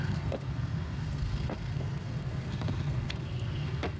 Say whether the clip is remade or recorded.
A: remade